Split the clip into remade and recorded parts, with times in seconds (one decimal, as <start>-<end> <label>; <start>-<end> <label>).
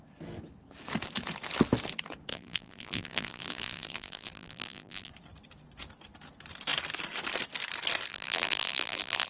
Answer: 0.0-2.3 recorded; 2.3-5.1 remade; 5.1-8.1 recorded; 8.1-9.3 remade